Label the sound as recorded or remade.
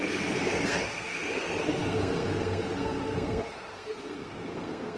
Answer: remade